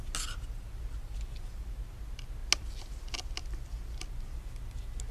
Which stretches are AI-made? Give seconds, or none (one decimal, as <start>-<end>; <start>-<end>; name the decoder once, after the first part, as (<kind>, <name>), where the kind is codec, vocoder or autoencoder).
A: none